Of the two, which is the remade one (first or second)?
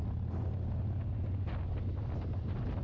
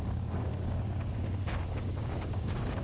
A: second